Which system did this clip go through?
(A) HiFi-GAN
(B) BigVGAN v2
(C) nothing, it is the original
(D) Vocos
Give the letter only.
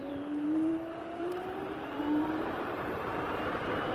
B